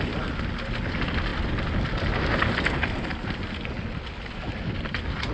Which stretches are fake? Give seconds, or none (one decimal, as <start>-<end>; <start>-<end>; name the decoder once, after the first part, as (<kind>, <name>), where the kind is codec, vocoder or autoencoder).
none